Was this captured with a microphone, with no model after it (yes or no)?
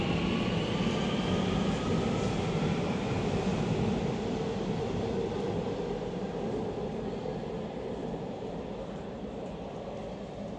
yes